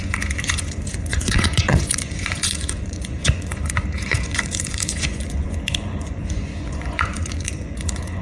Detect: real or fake fake